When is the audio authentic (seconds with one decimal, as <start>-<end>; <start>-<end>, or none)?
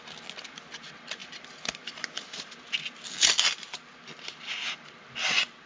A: 0.0-5.7